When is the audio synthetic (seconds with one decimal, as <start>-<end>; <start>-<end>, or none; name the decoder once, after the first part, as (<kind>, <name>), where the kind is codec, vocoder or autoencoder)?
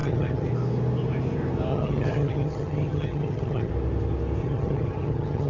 0.0-0.5 (vocoder, HiFi-GAN); 1.7-3.7; 4.4-5.5